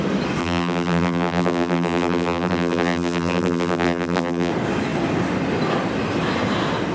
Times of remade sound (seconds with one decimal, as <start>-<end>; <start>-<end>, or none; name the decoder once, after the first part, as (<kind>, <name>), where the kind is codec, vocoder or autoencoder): 0.4-4.5 (vocoder, BigVGAN v2)